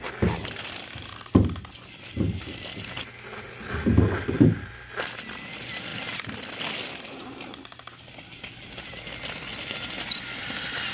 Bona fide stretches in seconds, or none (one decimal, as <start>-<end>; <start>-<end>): 0.0-10.9

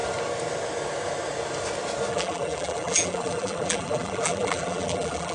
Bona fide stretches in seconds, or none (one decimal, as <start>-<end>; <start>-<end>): 0.0-2.1

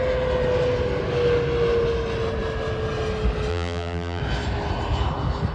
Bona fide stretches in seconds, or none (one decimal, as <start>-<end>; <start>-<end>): 0.0-3.5; 4.2-5.5

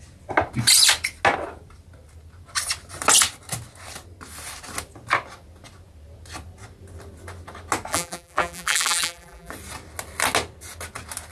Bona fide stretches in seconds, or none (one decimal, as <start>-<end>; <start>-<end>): 0.0-7.9; 9.5-11.3

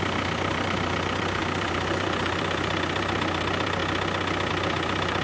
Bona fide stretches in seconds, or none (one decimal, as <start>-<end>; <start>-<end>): 3.8-4.5

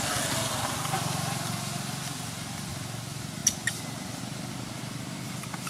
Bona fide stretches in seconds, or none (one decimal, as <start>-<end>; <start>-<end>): 0.0-5.7

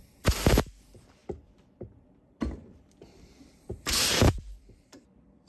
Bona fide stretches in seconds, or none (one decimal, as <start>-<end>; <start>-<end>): none

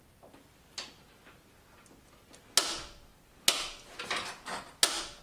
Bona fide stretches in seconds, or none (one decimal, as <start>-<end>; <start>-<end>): 0.0-5.2